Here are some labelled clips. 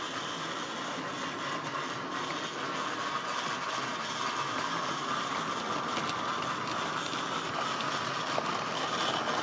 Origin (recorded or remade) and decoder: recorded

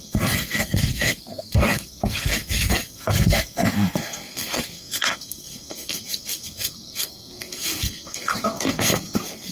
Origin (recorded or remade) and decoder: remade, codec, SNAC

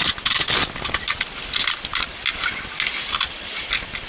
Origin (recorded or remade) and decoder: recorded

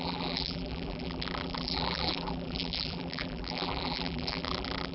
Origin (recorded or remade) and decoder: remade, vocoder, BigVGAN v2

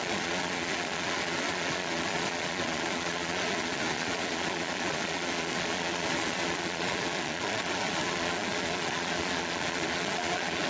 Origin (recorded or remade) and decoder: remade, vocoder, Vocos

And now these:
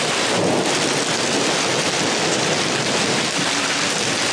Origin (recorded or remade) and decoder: recorded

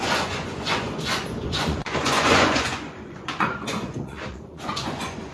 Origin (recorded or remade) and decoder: remade, vocoder, Vocos